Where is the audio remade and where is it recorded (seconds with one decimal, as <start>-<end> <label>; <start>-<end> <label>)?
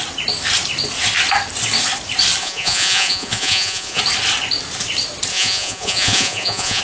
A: 0.0-2.4 recorded; 2.4-4.0 remade; 4.0-5.3 recorded; 5.3-6.8 remade